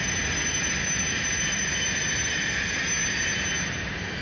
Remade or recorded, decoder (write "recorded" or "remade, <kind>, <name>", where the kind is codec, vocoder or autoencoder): recorded